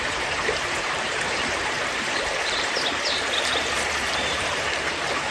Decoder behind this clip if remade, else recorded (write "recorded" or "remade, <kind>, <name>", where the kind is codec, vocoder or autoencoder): remade, vocoder, BigVGAN v2